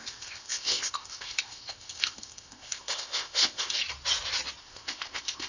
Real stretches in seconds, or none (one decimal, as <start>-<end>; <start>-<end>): 3.8-4.6